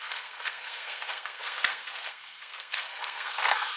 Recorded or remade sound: remade